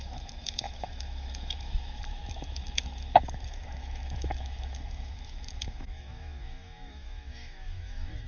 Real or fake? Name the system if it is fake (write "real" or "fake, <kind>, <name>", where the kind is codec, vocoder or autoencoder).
fake, autoencoder, DAC-VAE